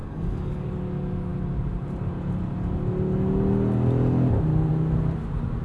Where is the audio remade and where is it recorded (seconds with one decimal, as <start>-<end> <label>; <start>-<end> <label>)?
0.0-0.7 remade; 0.7-5.6 recorded